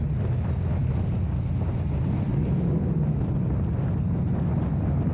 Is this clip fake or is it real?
real